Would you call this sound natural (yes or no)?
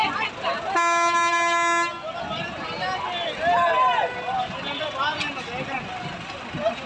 yes